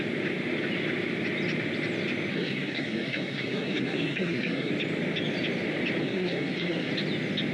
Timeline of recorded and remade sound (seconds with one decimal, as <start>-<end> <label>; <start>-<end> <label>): 0.0-2.3 recorded; 2.3-4.7 remade; 4.7-6.0 recorded; 6.0-6.9 remade; 6.9-7.5 recorded